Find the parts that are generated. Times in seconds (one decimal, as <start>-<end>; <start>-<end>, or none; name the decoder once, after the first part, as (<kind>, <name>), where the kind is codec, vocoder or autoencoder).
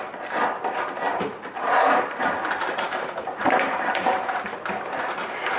1.1-4.5 (vocoder, BigVGAN v2)